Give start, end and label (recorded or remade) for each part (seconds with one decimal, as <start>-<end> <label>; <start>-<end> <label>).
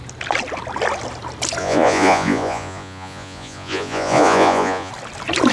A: 0.0-1.6 recorded; 1.6-4.9 remade; 4.9-5.5 recorded